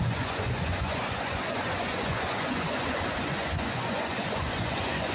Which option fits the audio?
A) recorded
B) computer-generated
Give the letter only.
B